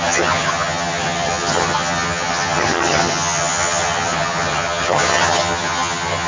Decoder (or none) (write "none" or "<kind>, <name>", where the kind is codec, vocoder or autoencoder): vocoder, HiFi-GAN